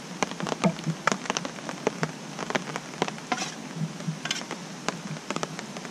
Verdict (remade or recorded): recorded